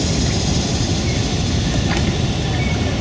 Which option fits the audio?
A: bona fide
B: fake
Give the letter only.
A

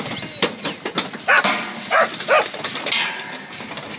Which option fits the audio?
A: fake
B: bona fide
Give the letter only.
B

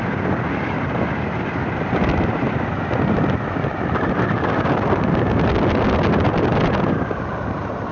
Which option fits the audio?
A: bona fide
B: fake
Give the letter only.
A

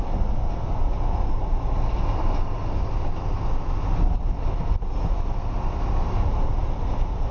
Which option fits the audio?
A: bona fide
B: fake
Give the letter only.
A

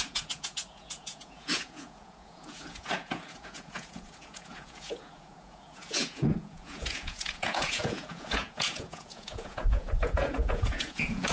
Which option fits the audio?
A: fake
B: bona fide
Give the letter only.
A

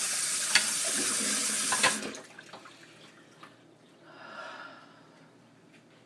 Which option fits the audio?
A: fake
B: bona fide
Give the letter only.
B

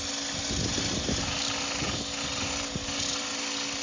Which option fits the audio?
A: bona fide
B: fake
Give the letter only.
A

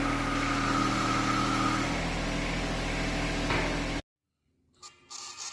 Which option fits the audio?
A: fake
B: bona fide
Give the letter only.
B